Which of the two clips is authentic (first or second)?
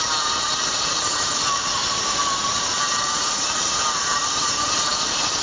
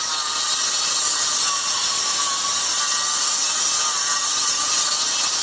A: second